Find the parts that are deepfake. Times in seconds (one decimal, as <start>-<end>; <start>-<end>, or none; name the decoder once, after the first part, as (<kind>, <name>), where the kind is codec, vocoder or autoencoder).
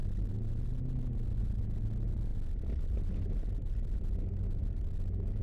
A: none